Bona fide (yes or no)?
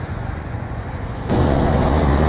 no